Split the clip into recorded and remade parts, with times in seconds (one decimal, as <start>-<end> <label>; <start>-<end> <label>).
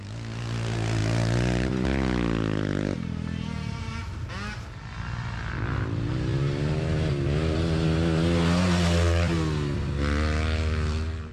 0.0-11.3 recorded